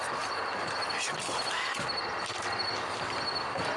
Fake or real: real